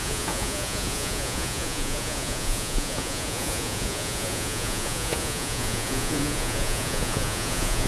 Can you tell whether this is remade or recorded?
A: remade